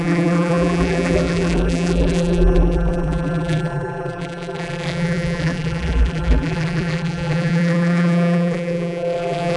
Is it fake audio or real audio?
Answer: fake